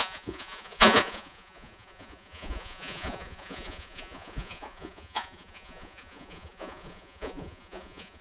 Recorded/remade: remade